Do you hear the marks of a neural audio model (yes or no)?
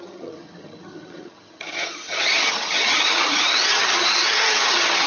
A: yes